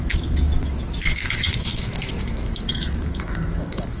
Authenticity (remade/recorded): remade